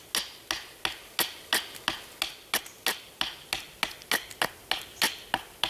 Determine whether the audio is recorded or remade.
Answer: recorded